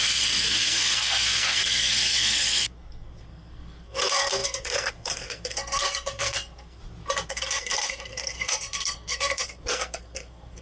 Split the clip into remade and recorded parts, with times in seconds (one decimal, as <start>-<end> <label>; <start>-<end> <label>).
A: 0.0-6.8 remade; 6.8-7.3 recorded; 7.3-10.6 remade